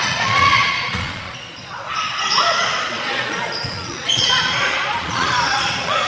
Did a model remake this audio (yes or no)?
yes